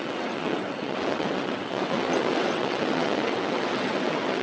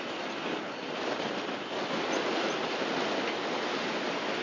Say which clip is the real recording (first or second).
second